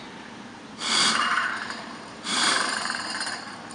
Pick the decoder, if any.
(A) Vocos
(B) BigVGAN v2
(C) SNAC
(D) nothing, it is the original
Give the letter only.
B